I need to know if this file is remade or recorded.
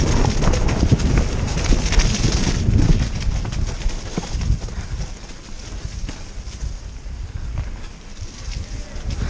recorded